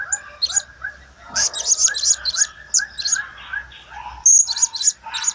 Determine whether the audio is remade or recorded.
recorded